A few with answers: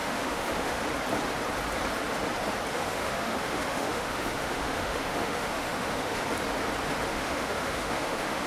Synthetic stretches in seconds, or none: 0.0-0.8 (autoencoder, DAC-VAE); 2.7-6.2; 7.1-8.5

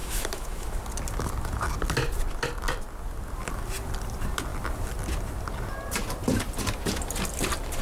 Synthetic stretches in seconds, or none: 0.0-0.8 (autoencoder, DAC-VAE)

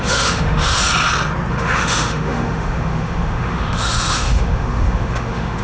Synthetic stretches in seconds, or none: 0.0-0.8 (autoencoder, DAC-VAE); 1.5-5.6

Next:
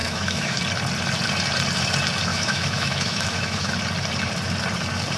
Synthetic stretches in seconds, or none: 0.0-0.6 (autoencoder, DAC-VAE); 2.3-3.7